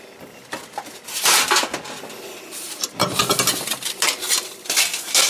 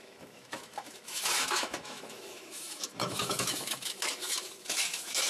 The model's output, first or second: second